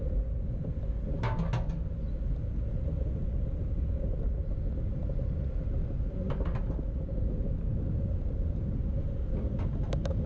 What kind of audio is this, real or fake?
real